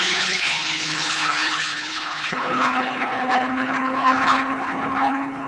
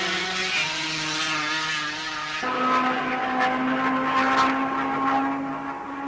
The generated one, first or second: first